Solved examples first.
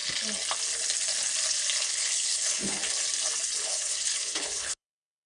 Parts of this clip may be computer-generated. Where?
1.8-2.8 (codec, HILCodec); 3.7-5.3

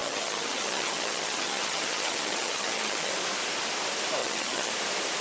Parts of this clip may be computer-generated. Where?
0.0-3.1 (vocoder, HiFi-GAN); 4.2-4.7

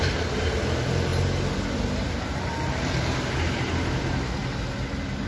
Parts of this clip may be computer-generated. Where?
none

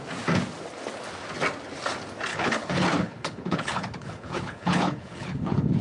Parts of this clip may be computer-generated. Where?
2.3-5.8 (codec, HILCodec)

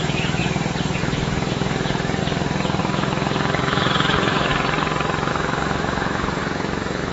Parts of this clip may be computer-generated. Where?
0.0-0.4 (autoencoder, DAC-VAE); 1.0-2.2; 2.8-4.5; 5.3-7.1